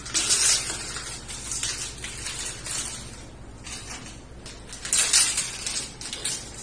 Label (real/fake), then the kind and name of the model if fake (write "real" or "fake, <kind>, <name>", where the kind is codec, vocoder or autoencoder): real